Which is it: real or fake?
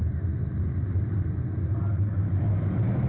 real